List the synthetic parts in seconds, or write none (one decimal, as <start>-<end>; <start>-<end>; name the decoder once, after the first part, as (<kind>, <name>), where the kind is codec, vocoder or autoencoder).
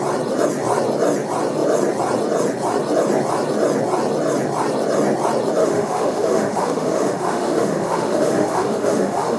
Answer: 5.6-9.4 (autoencoder, DAC-VAE)